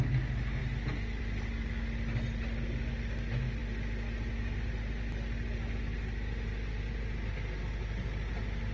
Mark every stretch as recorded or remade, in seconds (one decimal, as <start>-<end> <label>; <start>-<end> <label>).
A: 0.0-8.7 recorded